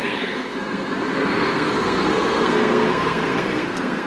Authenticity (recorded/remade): remade